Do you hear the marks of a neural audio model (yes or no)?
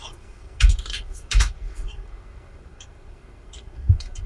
yes